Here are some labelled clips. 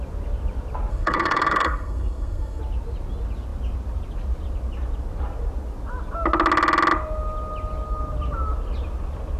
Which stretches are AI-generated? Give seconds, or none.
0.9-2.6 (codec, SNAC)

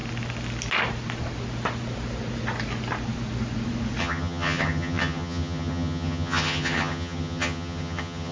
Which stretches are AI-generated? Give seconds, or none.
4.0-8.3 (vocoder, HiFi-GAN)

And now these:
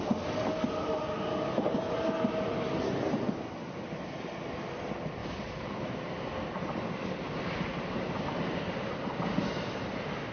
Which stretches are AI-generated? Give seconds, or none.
5.2-5.8 (vocoder, BigVGAN v2)

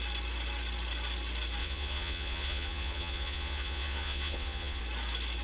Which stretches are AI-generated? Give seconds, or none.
1.6-4.8 (vocoder, Vocos)

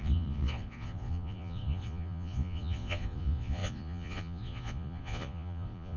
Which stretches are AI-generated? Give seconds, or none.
0.0-6.0 (vocoder, Vocos)

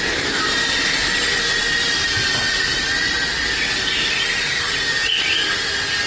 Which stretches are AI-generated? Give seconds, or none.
1.6-4.8 (vocoder, BigVGAN v2)